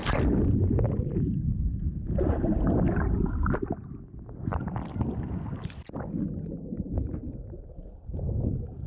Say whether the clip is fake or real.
real